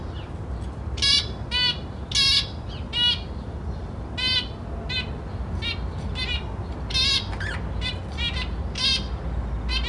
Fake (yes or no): no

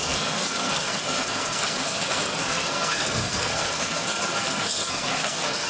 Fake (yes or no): yes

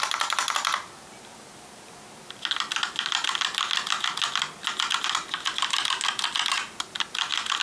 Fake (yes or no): no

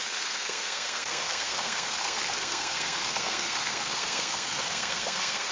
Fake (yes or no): yes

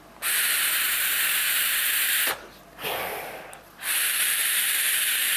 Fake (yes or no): no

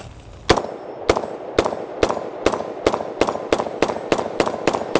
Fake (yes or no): no